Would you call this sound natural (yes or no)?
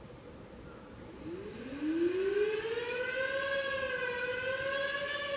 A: yes